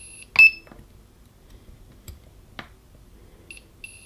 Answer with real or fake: real